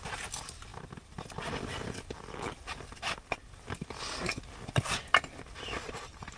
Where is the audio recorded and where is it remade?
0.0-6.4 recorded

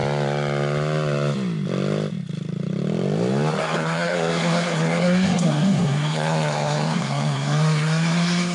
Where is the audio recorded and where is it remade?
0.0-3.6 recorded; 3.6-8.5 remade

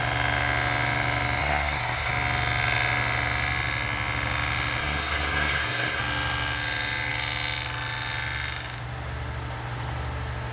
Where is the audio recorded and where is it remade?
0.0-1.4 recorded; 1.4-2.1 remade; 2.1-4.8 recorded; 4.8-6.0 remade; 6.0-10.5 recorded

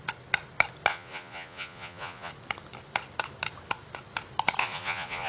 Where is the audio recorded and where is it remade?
0.0-0.9 recorded; 0.9-2.3 remade; 2.3-4.6 recorded; 4.6-5.3 remade

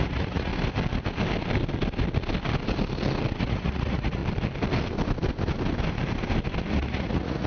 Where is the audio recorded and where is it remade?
0.0-0.5 remade; 0.5-3.4 recorded; 3.4-4.2 remade; 4.2-6.7 recorded; 6.7-7.5 remade